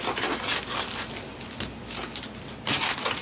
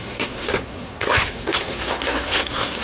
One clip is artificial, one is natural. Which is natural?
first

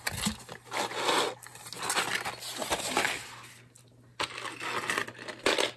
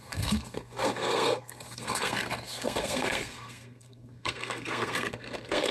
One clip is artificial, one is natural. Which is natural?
first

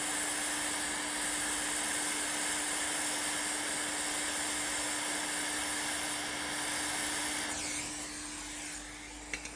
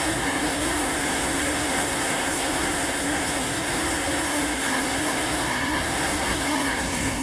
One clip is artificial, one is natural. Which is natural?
first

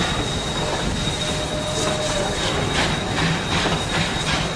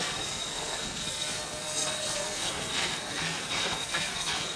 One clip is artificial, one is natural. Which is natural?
first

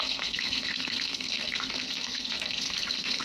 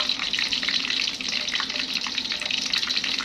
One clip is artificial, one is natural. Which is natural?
second